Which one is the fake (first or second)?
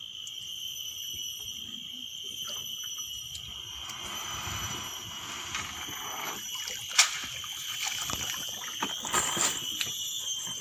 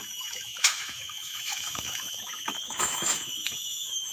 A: second